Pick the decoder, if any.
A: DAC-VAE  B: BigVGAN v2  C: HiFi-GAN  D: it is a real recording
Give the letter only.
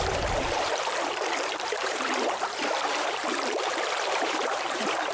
B